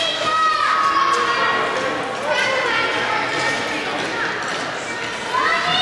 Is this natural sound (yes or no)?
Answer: yes